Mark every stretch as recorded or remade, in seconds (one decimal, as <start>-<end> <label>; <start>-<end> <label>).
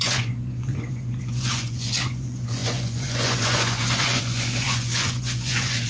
0.0-5.9 remade